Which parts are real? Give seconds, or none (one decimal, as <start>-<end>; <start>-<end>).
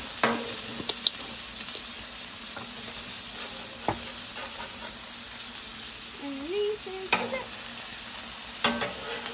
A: 0.0-9.3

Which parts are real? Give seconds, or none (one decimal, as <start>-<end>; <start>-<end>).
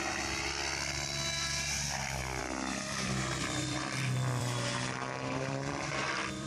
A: 0.0-2.4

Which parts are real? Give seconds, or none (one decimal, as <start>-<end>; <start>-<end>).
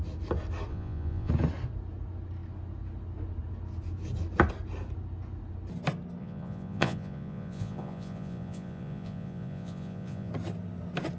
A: 0.0-0.7; 1.3-6.2; 10.3-11.2